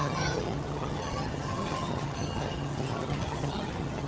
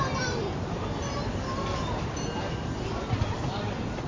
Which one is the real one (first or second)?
second